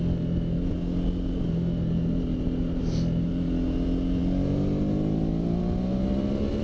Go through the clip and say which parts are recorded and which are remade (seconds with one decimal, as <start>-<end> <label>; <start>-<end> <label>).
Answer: 0.0-6.6 recorded